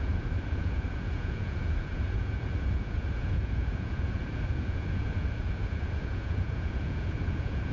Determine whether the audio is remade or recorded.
remade